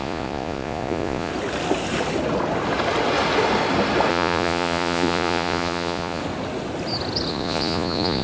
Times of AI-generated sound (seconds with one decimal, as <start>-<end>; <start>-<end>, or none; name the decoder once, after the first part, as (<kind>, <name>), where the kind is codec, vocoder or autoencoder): 0.0-1.3 (vocoder, Vocos); 4.1-6.2; 7.3-8.2

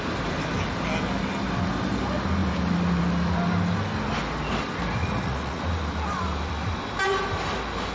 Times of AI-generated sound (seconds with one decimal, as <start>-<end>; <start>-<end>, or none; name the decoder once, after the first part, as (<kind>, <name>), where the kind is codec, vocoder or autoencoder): 5.0-5.6 (vocoder, Vocos)

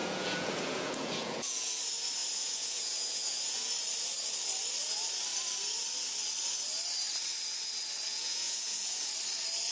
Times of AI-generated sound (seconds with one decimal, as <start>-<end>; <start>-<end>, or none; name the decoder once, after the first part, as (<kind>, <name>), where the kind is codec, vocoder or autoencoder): 0.0-1.8 (vocoder, Vocos); 2.2-3.7; 8.1-9.1

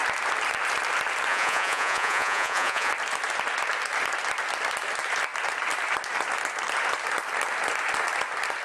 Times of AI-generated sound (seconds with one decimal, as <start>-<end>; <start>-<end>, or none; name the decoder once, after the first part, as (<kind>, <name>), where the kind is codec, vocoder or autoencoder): 1.3-2.9 (vocoder, Vocos)

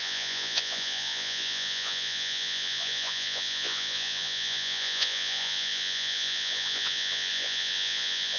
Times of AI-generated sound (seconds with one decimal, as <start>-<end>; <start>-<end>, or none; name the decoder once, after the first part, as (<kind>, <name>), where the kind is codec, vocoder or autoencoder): 0.0-8.4 (vocoder, Vocos)

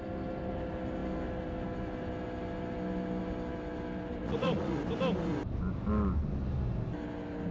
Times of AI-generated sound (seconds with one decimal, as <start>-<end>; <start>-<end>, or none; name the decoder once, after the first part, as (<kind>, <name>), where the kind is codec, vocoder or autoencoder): 4.2-4.8 (vocoder, Vocos)

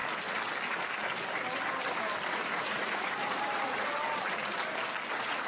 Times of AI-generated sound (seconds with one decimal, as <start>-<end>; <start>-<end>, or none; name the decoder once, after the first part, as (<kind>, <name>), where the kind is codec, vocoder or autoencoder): 2.3-3.8 (vocoder, Vocos); 5.1-5.5

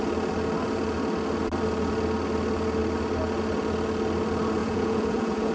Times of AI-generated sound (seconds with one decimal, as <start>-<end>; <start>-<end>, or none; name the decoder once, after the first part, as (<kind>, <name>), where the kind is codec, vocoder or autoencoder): 4.6-5.5 (vocoder, Vocos)